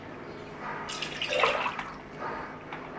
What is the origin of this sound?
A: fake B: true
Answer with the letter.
B